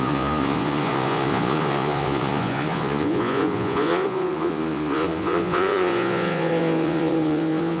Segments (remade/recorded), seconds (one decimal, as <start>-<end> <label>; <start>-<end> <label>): 0.0-7.8 remade